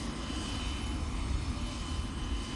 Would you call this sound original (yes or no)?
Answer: yes